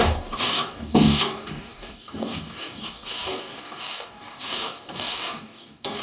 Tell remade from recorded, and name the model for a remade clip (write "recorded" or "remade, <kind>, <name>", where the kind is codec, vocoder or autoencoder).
remade, codec, DAC